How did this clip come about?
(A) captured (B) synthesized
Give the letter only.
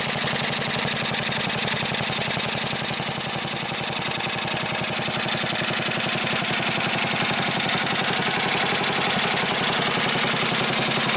A